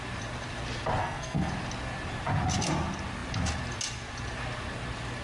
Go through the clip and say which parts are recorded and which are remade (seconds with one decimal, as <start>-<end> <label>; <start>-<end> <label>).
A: 0.0-1.0 recorded; 1.0-1.5 remade; 1.5-5.2 recorded